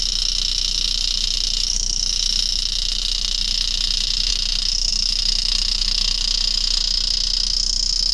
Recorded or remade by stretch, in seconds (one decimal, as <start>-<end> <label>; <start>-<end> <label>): 0.0-6.8 remade; 6.8-8.1 recorded